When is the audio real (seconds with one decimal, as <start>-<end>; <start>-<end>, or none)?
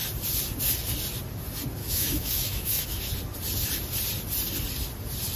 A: 0.0-1.8; 3.0-5.4